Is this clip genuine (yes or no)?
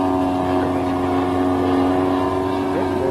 yes